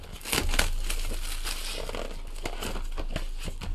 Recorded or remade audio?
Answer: recorded